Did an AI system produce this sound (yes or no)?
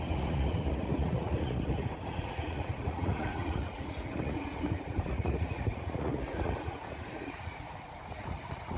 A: yes